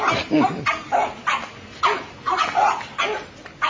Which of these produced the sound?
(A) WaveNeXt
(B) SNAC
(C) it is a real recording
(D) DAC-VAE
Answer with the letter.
C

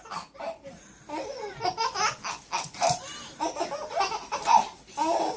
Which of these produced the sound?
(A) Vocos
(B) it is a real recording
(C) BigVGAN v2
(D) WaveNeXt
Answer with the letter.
B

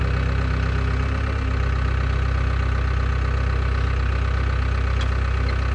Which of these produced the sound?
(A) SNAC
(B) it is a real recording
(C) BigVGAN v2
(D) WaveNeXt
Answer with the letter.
B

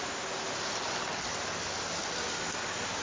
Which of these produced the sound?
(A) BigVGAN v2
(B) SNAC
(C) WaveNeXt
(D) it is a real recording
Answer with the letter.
D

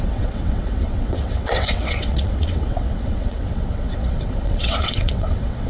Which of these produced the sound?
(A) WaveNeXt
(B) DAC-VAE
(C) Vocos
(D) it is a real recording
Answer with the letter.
A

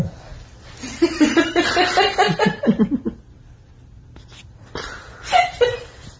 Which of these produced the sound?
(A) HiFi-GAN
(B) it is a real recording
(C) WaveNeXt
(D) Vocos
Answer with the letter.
B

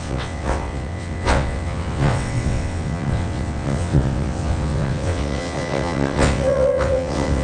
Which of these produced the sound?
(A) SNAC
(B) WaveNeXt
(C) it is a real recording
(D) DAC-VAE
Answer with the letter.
B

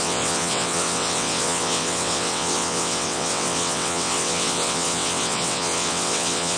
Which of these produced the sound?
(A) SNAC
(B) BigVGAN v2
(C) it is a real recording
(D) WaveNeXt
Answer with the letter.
D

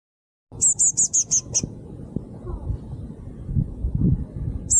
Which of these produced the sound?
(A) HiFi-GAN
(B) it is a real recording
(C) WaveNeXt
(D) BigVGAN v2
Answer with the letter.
B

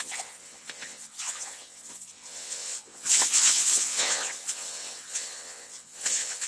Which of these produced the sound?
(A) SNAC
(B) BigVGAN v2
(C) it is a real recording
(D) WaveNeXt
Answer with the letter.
D